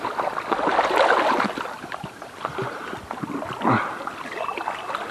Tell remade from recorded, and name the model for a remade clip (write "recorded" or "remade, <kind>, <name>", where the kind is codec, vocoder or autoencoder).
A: recorded